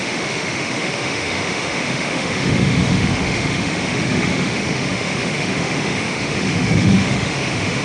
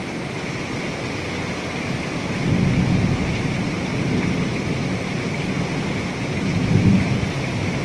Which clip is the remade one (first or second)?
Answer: first